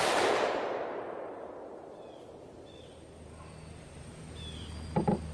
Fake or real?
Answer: real